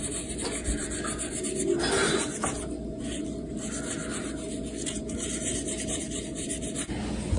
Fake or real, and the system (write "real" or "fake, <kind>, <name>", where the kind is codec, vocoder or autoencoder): real